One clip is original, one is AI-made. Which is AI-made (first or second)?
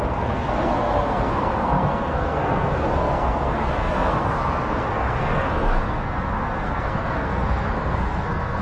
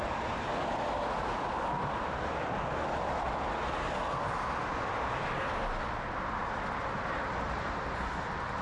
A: first